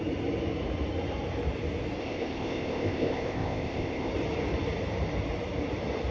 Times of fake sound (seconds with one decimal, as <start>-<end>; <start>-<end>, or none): 2.0-4.1